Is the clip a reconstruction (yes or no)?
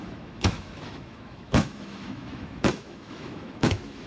yes